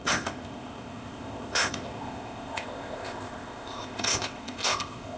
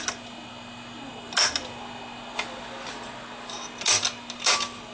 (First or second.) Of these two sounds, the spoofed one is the first